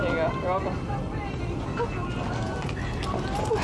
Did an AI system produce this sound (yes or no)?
no